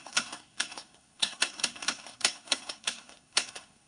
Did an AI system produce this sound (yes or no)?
yes